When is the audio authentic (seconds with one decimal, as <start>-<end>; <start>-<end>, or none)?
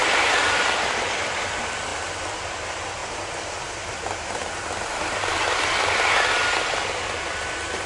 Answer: 1.9-2.4; 3.0-7.9